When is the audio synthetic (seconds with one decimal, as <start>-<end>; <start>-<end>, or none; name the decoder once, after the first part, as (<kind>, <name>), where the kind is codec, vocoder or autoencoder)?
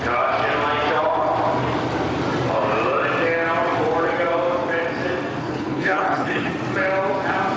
5.4-6.5 (codec, HILCodec)